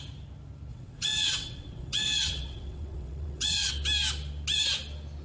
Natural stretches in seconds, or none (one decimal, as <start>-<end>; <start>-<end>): 0.0-0.7; 3.7-5.2